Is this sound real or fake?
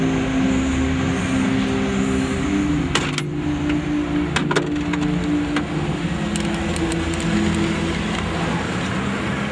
real